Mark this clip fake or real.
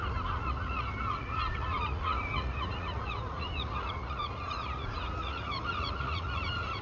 fake